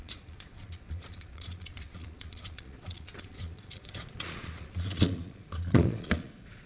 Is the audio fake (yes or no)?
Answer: yes